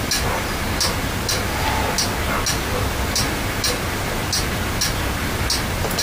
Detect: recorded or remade recorded